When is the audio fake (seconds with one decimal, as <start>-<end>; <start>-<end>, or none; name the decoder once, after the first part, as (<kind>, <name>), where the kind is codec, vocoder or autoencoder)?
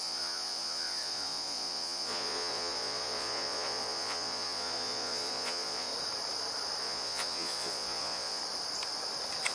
0.0-5.9 (vocoder, Vocos); 6.8-8.4